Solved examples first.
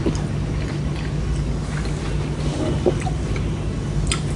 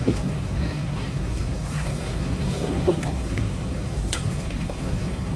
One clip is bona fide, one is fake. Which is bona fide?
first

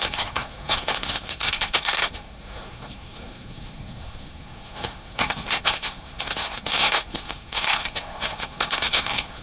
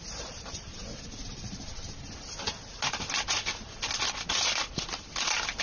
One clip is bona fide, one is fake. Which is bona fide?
second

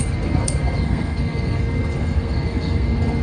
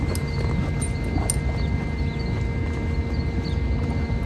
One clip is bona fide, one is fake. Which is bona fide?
second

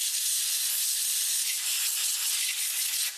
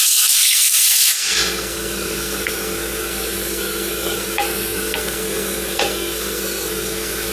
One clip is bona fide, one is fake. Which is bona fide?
first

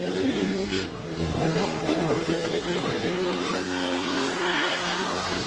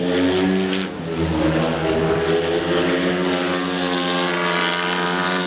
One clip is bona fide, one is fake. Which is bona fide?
second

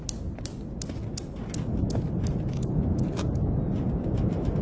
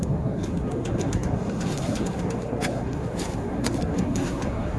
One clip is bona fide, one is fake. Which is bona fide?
first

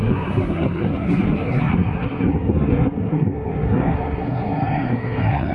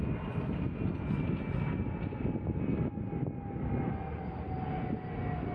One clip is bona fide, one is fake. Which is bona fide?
second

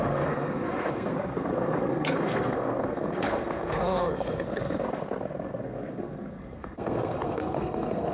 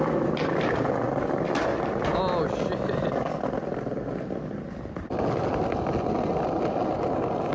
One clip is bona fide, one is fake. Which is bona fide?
second